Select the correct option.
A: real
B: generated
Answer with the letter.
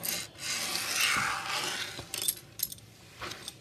A